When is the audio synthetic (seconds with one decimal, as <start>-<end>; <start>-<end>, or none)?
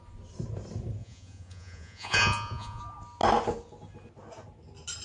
1.0-2.8